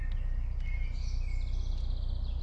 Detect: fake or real real